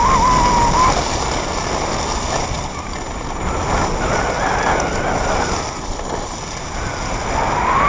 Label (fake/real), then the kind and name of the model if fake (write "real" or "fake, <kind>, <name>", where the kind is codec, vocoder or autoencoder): real